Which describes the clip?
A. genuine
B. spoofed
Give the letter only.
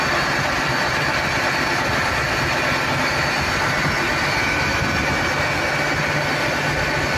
A